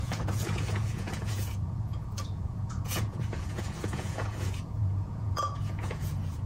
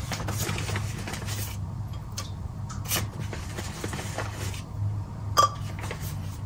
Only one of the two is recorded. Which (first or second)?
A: second